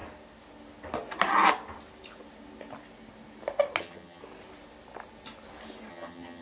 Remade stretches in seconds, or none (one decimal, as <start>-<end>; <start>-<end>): 3.8-4.2; 5.9-6.4